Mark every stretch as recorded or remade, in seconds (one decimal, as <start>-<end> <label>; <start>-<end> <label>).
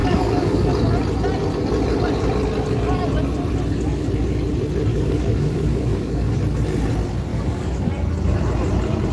0.0-0.7 remade; 0.7-4.9 recorded; 4.9-6.3 remade; 6.3-7.3 recorded; 7.3-7.9 remade; 7.9-9.1 recorded